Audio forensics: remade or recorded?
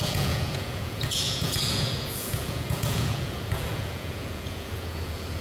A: remade